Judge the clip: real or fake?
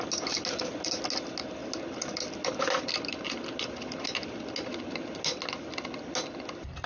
real